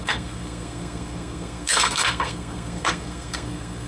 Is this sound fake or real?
fake